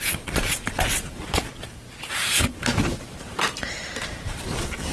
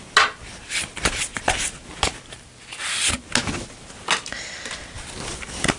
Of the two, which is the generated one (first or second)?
first